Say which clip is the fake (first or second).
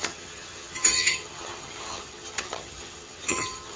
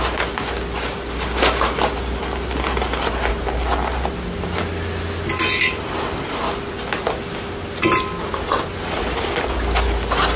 first